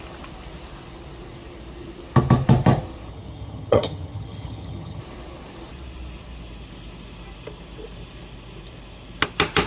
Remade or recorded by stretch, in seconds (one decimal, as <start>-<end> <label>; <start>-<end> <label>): 0.0-3.1 recorded; 3.1-5.0 remade; 5.0-9.7 recorded

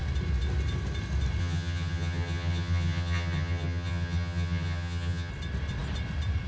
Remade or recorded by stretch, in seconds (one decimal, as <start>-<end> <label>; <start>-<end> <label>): 0.0-1.4 recorded; 1.4-5.3 remade; 5.3-6.5 recorded